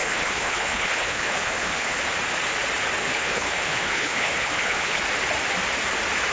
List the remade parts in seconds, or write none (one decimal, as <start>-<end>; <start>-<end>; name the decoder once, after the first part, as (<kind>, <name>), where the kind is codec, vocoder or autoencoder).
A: 0.0-2.0 (codec, HILCodec); 3.0-5.0